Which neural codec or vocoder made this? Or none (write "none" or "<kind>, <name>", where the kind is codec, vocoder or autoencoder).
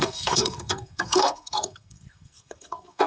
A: codec, SNAC